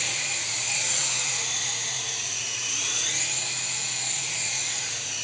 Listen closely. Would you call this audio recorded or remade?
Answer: remade